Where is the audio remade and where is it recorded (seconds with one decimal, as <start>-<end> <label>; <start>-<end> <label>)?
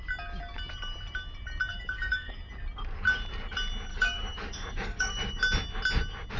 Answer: 0.0-1.7 recorded; 1.7-2.4 remade; 2.4-3.9 recorded; 3.9-5.4 remade; 5.4-6.4 recorded